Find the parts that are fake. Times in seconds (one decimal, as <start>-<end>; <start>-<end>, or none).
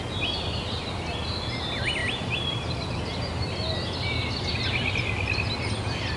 2.0-4.4